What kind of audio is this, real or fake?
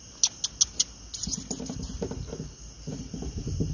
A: real